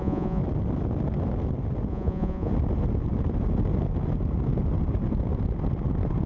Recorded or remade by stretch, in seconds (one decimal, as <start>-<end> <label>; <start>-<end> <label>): 0.0-0.4 remade; 0.4-1.9 recorded; 1.9-2.5 remade; 2.5-6.3 recorded

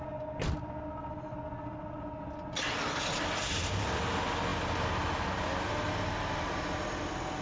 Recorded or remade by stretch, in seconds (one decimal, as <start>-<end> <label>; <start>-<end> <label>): 0.0-7.4 recorded

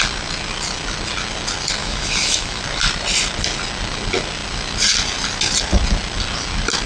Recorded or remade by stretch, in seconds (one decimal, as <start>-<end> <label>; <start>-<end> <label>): 0.0-1.8 recorded; 1.8-2.6 remade; 2.6-6.9 recorded

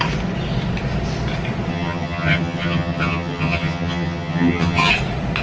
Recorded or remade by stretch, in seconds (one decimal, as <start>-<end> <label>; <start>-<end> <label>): 0.0-1.7 recorded; 1.7-4.9 remade; 4.9-5.4 recorded

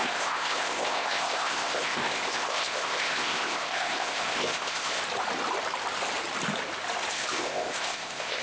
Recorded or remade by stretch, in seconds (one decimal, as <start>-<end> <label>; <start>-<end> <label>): 0.0-5.0 remade; 5.0-7.1 recorded; 7.1-8.4 remade